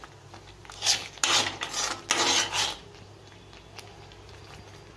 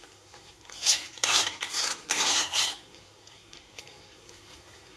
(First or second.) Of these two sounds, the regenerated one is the second